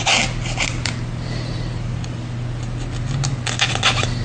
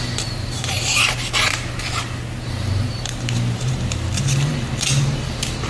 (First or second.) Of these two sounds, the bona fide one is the first